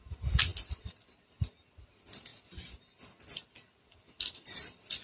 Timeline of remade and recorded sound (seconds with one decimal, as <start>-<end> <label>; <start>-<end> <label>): 0.0-5.0 recorded